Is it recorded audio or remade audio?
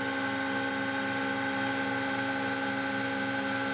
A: recorded